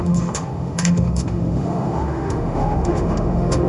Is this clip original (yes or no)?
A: no